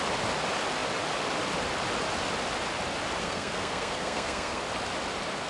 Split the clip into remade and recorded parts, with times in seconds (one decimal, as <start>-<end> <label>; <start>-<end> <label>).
0.0-3.2 recorded; 3.2-4.6 remade; 4.6-5.5 recorded